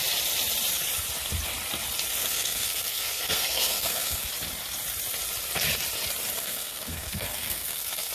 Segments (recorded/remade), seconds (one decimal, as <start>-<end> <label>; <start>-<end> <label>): 0.0-2.2 recorded; 2.2-4.3 remade; 4.3-6.4 recorded; 6.4-8.1 remade